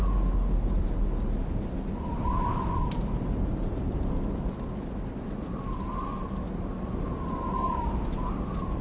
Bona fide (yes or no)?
yes